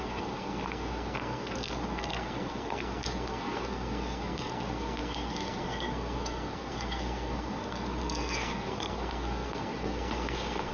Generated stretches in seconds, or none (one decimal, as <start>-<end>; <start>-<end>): 0.0-10.7